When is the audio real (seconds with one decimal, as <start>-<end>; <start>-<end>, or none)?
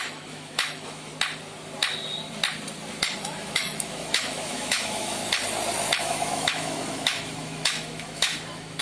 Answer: 1.1-3.2; 5.2-6.0